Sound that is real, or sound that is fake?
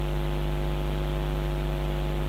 real